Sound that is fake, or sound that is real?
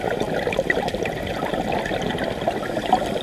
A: real